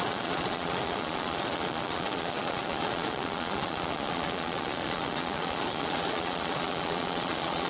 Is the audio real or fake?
fake